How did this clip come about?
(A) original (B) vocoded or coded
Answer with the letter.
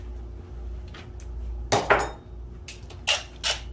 A